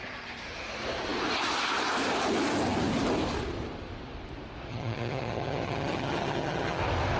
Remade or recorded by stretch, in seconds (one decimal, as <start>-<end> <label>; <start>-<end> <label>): 0.0-4.7 recorded; 4.7-6.8 remade; 6.8-7.2 recorded

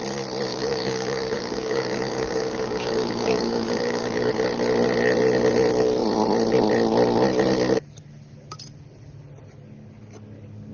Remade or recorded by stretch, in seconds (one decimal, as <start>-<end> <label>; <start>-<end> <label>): 0.0-0.5 recorded; 0.5-4.3 remade; 4.3-10.7 recorded

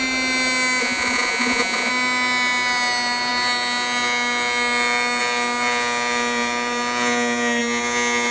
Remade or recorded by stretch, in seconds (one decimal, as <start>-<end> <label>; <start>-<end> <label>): 0.0-0.8 recorded; 0.8-1.9 remade; 1.9-8.3 recorded

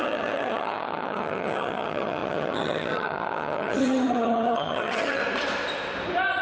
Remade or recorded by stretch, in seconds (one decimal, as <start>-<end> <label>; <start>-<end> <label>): 0.0-5.2 remade; 5.2-6.4 recorded

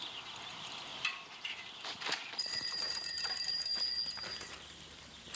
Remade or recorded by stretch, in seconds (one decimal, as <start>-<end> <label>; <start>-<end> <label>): 0.0-3.7 remade; 3.7-4.4 recorded; 4.4-5.4 remade

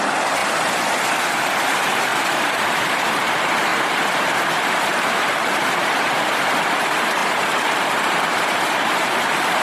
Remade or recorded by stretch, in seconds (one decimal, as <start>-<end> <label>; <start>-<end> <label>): 0.0-3.7 remade; 3.7-4.2 recorded; 4.2-9.6 remade

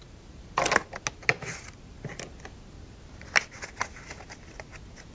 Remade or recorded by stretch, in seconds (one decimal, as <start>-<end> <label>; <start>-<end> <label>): 0.0-5.1 recorded

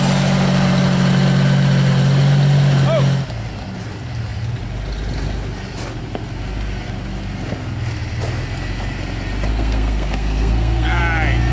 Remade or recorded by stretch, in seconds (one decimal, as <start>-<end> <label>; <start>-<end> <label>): 0.0-9.5 recorded; 9.5-11.0 remade; 11.0-11.5 recorded